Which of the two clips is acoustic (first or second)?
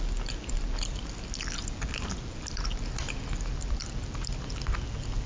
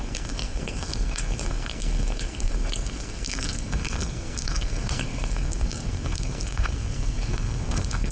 first